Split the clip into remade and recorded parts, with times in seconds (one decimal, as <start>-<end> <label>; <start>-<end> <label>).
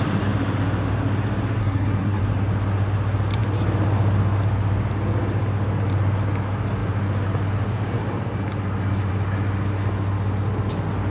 0.0-1.6 recorded; 1.6-2.2 remade; 2.2-11.1 recorded